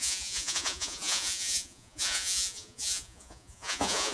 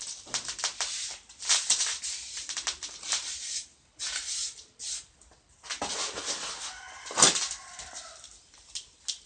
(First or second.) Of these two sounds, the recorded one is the second